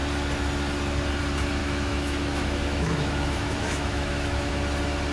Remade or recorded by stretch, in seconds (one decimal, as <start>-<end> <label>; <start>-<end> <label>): 0.0-1.6 recorded; 1.6-4.5 remade; 4.5-5.1 recorded